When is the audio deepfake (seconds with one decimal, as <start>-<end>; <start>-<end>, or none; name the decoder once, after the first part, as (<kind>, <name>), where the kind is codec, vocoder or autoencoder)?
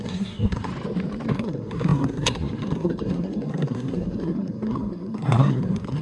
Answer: 0.0-0.7 (codec, SNAC); 1.3-6.0